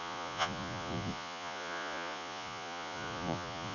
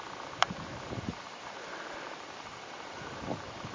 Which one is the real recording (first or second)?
second